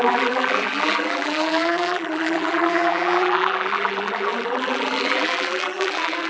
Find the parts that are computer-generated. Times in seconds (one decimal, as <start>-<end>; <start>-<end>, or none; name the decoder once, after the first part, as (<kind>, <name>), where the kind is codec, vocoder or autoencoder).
0.0-6.3 (vocoder, BigVGAN v2)